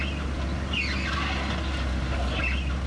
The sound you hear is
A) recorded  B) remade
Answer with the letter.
A